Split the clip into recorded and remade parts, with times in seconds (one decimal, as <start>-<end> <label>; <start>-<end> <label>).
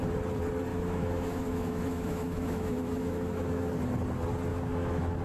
0.0-0.7 recorded; 0.7-3.7 remade; 3.7-4.5 recorded; 4.5-5.2 remade